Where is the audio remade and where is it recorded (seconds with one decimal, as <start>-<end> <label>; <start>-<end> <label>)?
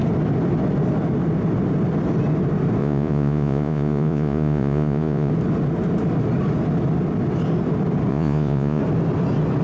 0.0-2.8 recorded; 2.8-5.3 remade; 5.3-8.1 recorded; 8.1-8.8 remade; 8.8-9.6 recorded